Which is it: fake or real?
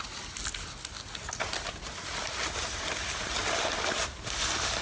real